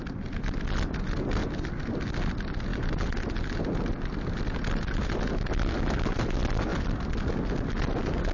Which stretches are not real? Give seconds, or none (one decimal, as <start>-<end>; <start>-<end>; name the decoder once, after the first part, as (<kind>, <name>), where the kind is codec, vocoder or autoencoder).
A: none